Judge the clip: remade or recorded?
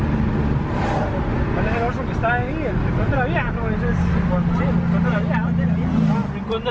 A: recorded